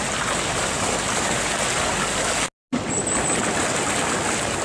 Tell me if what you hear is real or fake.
real